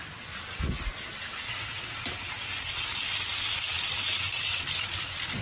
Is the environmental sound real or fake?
real